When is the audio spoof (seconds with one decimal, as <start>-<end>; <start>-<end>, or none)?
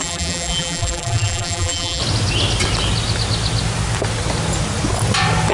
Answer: 0.0-2.0